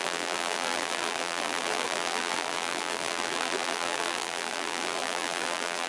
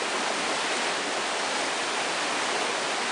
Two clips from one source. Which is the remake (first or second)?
first